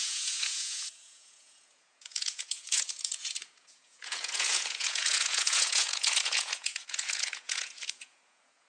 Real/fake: fake